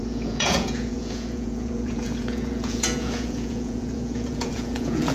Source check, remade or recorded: remade